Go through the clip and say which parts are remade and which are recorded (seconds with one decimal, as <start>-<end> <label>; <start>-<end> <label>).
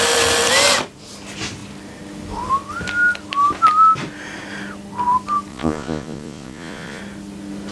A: 0.0-5.5 recorded; 5.5-7.0 remade; 7.0-7.7 recorded